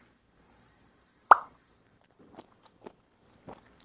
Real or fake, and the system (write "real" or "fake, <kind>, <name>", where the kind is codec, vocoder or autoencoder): fake, vocoder, BigVGAN v2